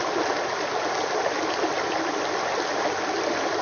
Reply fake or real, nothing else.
real